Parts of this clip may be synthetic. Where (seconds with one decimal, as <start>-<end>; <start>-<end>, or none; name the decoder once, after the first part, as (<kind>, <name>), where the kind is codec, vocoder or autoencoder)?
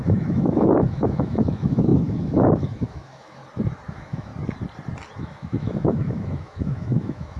0.0-3.4 (autoencoder, DAC-VAE); 3.9-4.3; 5.2-7.4